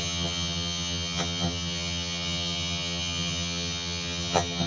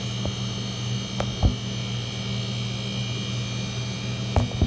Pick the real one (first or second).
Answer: second